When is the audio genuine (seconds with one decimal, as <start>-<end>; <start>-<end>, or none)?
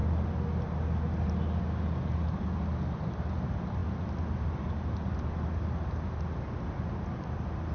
0.0-7.7